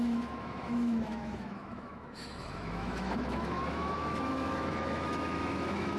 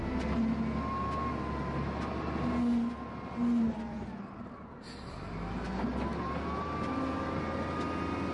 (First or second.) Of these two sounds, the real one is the second